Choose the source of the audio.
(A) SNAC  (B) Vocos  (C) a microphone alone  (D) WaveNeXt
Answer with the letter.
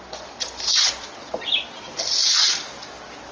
C